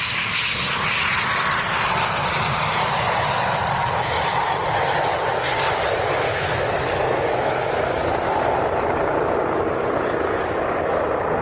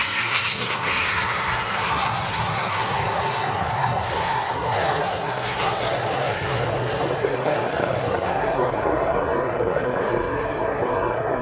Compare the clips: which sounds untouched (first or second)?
first